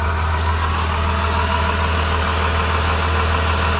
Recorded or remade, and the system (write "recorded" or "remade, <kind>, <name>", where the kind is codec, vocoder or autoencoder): recorded